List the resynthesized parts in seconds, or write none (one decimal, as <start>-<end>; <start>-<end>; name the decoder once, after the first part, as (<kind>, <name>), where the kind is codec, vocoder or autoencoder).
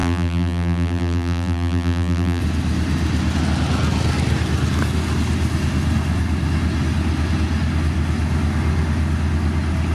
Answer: 0.0-2.4 (vocoder, BigVGAN v2)